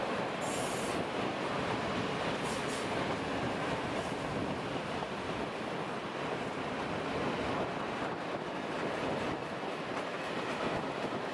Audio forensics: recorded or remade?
recorded